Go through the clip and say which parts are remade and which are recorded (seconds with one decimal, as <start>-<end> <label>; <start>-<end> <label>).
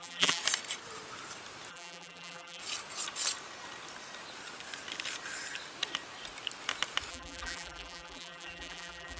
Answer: 0.0-0.4 remade; 0.4-1.7 recorded; 1.7-2.6 remade; 2.6-7.1 recorded; 7.1-9.2 remade